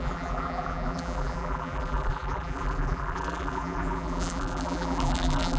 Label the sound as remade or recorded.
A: remade